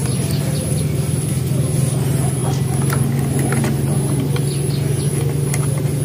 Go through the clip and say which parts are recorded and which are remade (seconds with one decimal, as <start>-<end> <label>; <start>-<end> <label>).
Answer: 0.0-0.8 remade; 0.8-2.4 recorded; 2.4-5.1 remade; 5.1-6.0 recorded